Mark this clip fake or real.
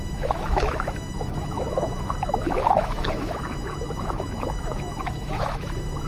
fake